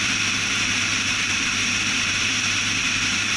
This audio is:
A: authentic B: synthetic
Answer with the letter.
B